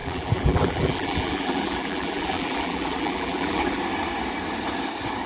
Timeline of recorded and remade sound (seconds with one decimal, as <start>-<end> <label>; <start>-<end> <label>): 0.0-3.8 remade; 3.8-5.3 recorded